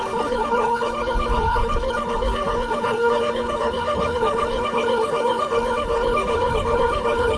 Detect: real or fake fake